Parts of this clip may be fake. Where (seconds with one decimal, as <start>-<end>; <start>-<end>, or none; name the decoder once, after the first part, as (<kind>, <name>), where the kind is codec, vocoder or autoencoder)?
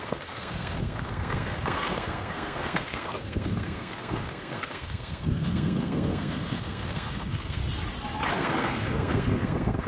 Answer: 0.0-7.6 (codec, SNAC); 8.3-9.9